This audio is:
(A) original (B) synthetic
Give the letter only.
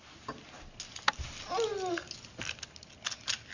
A